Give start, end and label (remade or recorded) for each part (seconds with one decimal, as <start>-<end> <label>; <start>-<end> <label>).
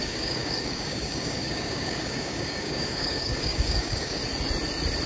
0.0-4.2 remade; 4.2-5.1 recorded